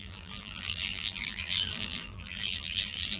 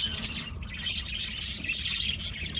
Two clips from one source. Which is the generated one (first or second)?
first